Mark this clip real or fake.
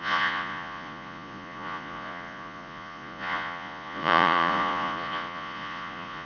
fake